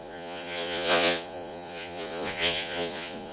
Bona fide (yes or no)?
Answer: no